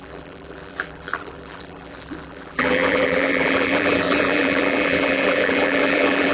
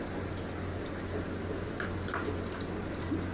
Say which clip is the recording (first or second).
second